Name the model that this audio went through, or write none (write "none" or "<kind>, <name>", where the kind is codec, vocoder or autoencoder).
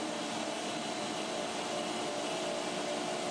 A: none